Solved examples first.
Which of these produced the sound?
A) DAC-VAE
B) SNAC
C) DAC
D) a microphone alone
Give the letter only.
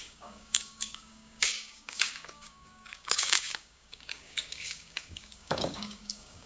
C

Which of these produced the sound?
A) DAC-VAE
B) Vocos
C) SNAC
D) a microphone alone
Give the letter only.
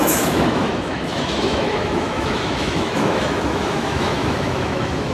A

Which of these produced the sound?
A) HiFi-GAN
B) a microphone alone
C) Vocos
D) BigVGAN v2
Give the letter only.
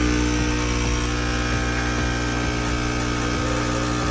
B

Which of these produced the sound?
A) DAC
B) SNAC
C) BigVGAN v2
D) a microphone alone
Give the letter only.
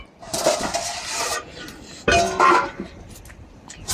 D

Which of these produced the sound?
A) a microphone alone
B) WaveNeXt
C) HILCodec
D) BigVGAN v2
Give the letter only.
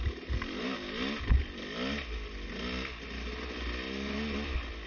A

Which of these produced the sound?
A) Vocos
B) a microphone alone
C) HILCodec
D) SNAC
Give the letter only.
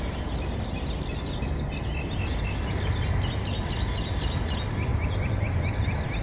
B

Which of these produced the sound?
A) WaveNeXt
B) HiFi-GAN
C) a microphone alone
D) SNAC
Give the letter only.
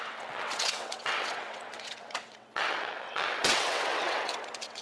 A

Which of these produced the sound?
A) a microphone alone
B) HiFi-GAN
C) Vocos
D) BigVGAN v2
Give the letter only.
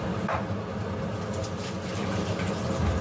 A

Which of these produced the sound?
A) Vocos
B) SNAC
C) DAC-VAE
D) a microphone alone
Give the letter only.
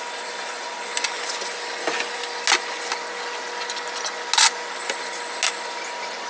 D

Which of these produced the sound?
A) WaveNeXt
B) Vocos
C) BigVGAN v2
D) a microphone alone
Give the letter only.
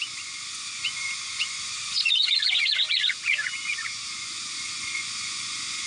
B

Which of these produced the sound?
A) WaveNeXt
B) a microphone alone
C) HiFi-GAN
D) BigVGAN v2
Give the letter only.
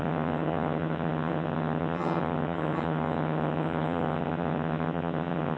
C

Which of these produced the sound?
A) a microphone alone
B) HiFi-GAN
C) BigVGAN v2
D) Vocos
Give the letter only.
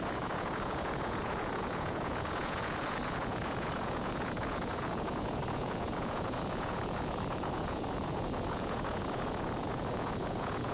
D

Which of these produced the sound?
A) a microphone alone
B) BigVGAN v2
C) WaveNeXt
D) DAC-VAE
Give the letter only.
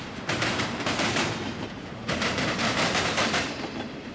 B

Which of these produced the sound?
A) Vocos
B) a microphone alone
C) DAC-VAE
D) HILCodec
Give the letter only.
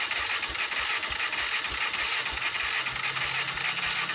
B